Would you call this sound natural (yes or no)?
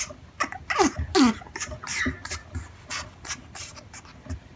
yes